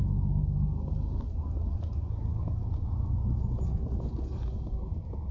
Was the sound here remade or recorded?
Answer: recorded